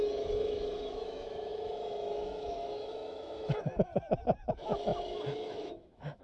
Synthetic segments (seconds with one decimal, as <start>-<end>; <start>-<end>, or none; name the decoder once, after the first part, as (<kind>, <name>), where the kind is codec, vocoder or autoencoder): 0.0-3.9 (autoencoder, DAC-VAE); 4.5-6.2